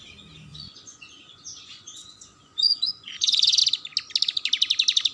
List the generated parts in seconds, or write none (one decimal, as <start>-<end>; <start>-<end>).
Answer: 0.5-3.6